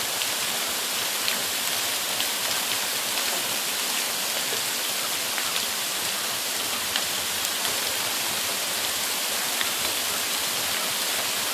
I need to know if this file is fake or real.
real